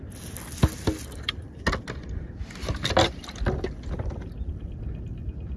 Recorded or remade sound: recorded